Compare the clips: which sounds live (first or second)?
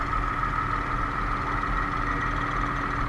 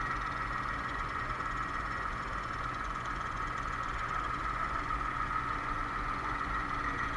first